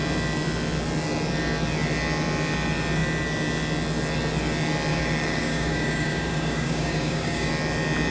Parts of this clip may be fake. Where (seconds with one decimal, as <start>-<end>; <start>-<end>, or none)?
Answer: 4.9-7.5